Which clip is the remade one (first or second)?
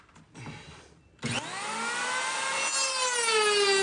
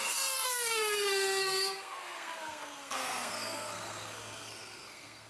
second